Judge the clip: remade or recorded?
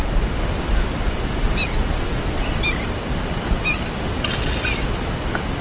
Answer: recorded